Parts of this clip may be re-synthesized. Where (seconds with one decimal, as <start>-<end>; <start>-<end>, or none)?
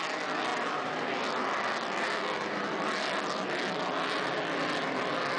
none